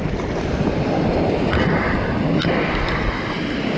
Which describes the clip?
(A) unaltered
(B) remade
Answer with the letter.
A